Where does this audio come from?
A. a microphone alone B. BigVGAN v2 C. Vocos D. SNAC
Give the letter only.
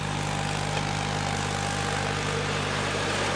A